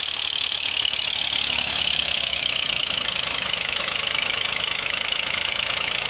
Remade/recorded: remade